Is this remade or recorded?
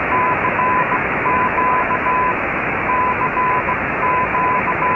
remade